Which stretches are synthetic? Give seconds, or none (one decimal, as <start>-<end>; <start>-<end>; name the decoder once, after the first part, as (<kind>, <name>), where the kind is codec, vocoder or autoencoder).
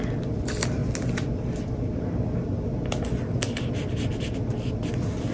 none